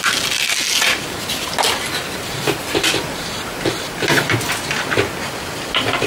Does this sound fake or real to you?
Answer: real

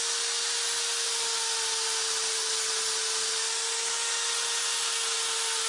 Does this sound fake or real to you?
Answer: real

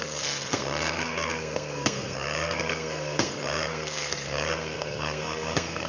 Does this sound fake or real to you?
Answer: fake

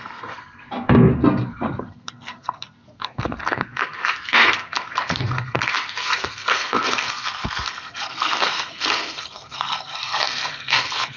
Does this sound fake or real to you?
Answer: fake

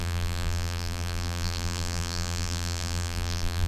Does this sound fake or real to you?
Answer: fake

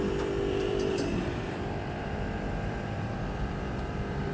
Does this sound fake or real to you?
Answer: fake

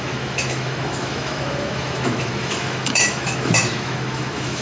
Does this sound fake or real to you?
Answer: fake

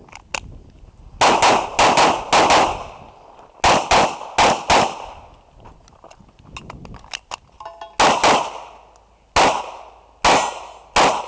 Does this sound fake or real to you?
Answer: real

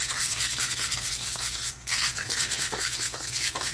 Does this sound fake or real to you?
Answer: fake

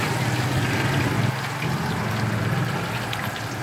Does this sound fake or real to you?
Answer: fake